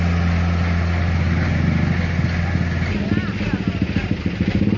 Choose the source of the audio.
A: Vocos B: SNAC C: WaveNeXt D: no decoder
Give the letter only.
D